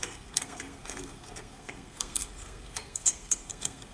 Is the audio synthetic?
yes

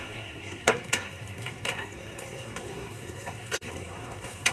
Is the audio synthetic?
yes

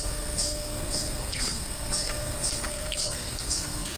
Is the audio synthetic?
yes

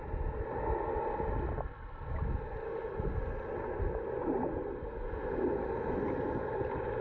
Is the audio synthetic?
no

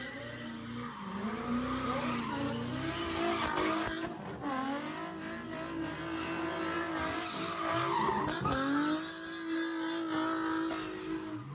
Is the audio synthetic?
no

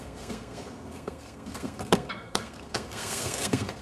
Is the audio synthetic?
yes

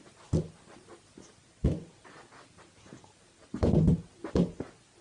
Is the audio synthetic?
no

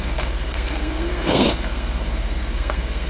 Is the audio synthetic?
yes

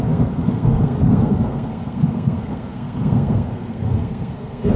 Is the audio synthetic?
yes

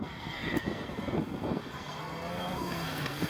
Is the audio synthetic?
yes